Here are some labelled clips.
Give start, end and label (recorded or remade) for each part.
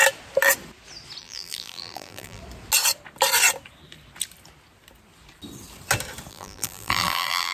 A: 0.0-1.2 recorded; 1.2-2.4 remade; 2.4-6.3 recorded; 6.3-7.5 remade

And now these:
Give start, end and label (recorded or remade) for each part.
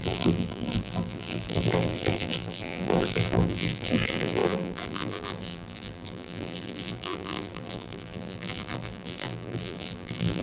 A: 0.0-10.4 remade